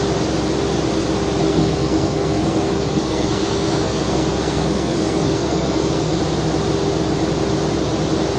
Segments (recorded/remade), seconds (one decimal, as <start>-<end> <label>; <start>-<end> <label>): 0.0-1.4 recorded; 1.4-6.2 remade; 6.2-8.4 recorded